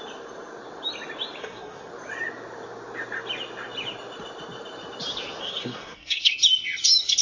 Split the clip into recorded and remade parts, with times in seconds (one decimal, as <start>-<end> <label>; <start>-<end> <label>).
0.0-1.4 recorded; 1.4-1.9 remade; 1.9-5.4 recorded; 5.4-6.3 remade; 6.3-7.2 recorded